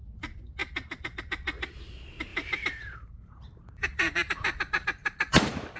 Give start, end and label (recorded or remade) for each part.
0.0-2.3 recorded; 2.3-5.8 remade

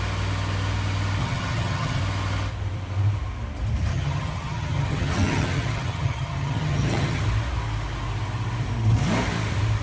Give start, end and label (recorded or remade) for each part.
0.0-1.2 recorded; 1.2-2.0 remade; 2.0-3.9 recorded; 3.9-7.2 remade; 7.2-9.8 recorded

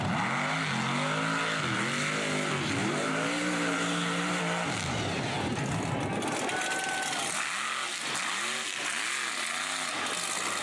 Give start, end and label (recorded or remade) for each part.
0.0-2.8 recorded; 2.8-4.4 remade; 4.4-10.6 recorded